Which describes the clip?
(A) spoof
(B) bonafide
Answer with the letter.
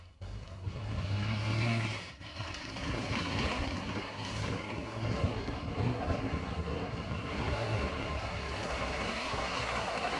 A